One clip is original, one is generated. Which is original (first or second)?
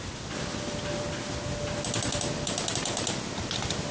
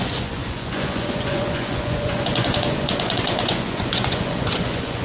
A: first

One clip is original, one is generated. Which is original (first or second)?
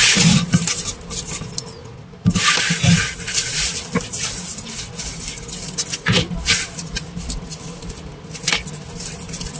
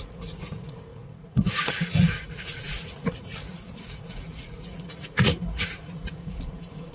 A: first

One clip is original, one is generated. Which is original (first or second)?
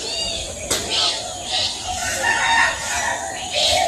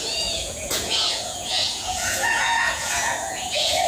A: first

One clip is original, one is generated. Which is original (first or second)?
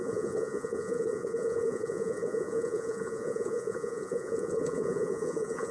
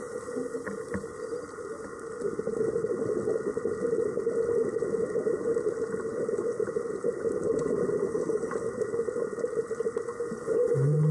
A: second